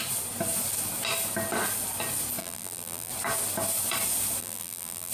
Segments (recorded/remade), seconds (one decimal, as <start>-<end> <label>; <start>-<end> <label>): 0.0-2.4 recorded; 2.4-3.1 remade; 3.1-4.4 recorded; 4.4-5.1 remade